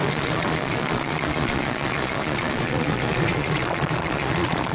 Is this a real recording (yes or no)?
no